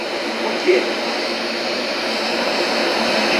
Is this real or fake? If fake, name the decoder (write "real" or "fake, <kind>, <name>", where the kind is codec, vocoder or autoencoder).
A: fake, vocoder, BigVGAN v2